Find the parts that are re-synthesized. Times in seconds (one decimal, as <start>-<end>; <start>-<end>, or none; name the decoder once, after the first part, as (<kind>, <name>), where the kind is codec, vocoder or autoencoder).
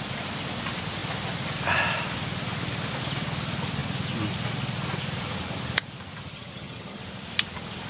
6.3-7.0 (vocoder, HiFi-GAN)